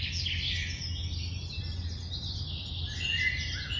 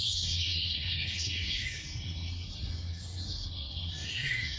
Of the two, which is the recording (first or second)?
first